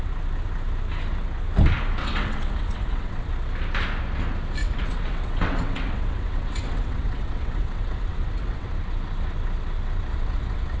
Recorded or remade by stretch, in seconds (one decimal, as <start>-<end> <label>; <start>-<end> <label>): 0.0-2.0 recorded; 2.0-3.3 remade; 3.3-4.6 recorded; 4.6-8.7 remade; 8.7-10.1 recorded; 10.1-10.8 remade